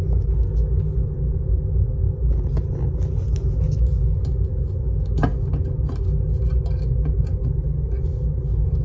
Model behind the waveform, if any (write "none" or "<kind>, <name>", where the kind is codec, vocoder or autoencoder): none